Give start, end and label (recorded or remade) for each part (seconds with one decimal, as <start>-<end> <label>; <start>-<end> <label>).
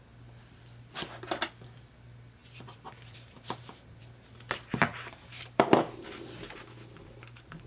0.0-2.4 recorded; 2.4-4.0 remade; 4.0-4.9 recorded; 4.9-5.7 remade; 5.7-7.7 recorded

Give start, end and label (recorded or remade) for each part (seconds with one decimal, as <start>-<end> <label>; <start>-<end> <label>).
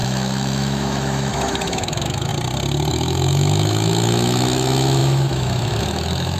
0.0-2.3 remade; 2.3-2.9 recorded; 2.9-6.4 remade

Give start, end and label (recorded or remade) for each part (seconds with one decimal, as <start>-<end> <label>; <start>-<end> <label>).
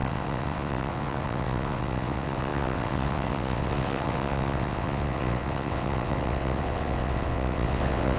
0.0-8.2 remade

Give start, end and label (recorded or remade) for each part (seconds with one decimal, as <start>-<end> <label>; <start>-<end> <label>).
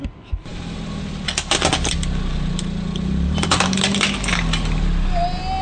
0.0-5.6 recorded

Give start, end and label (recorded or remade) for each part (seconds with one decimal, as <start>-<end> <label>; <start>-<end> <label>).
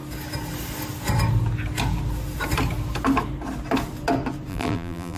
0.0-4.5 recorded; 4.5-5.2 remade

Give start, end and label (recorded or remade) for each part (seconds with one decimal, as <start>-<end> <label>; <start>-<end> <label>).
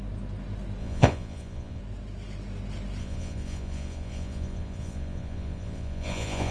0.0-0.8 recorded; 0.8-1.8 remade; 1.8-3.0 recorded; 3.0-6.5 remade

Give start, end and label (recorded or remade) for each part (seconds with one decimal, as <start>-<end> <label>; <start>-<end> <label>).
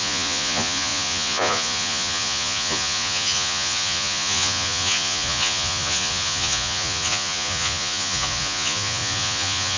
0.0-9.8 remade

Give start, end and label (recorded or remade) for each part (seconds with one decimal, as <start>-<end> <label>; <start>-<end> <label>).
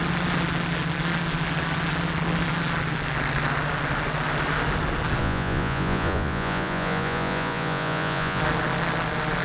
0.0-5.2 recorded; 5.2-8.4 remade; 8.4-9.4 recorded